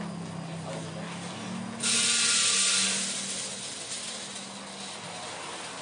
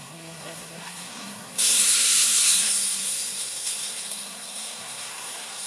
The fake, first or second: second